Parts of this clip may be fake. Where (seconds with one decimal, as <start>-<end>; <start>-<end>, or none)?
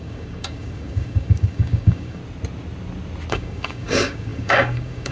0.0-2.2; 3.3-5.1